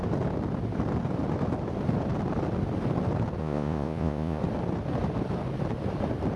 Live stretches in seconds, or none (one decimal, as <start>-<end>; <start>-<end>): 0.0-3.4; 4.4-6.4

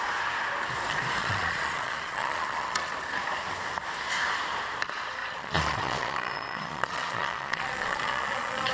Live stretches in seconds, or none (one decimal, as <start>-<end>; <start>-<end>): 0.0-1.2; 2.9-5.2